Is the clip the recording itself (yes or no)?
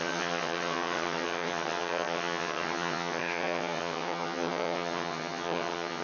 no